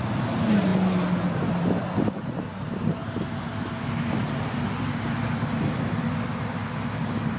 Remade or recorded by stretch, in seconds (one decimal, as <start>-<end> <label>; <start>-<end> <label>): 0.0-7.4 recorded